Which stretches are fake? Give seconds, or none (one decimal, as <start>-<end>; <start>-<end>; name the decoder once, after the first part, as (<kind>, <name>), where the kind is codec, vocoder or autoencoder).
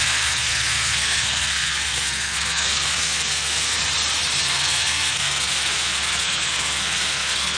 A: 0.0-3.8 (codec, SNAC); 4.4-7.6